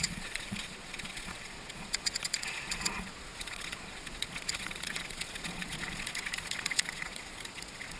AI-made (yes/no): yes